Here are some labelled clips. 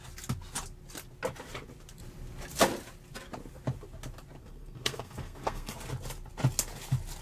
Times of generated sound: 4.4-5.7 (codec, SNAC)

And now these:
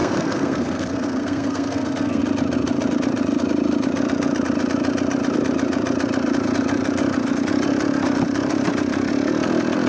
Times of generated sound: 0.0-2.2 (codec, SNAC)

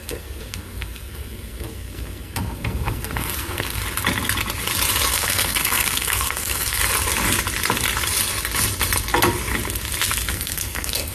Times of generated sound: 0.0-3.8 (codec, SNAC); 5.1-6.8; 10.3-11.1

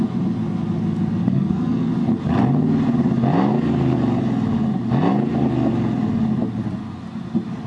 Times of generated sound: 1.2-1.9 (codec, SNAC)

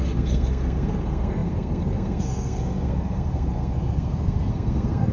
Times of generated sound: 0.0-5.1 (codec, SNAC)

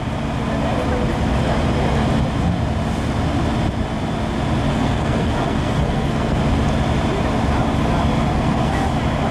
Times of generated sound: 4.7-6.4 (codec, SNAC); 8.3-8.9

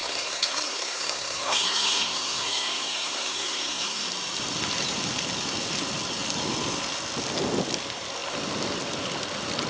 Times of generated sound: 0.0-4.1 (codec, SNAC)